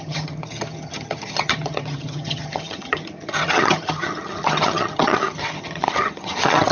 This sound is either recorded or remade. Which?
remade